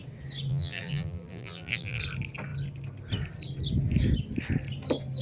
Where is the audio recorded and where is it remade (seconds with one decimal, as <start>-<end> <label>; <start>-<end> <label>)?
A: 0.0-0.5 recorded; 0.5-2.0 remade; 2.0-5.2 recorded